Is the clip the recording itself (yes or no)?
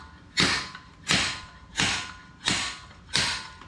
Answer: yes